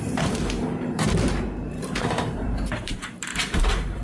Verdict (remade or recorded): remade